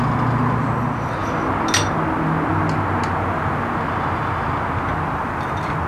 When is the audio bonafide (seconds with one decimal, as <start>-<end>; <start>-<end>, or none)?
0.0-5.9